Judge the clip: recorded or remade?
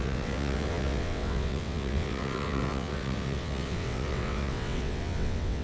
remade